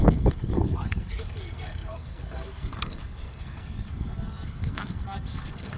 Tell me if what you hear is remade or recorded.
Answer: remade